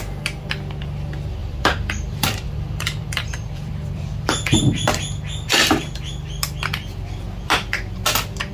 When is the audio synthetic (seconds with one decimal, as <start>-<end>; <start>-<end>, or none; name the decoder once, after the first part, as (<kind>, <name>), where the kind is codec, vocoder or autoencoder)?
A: 1.4-5.0 (vocoder, BigVGAN v2); 5.5-6.1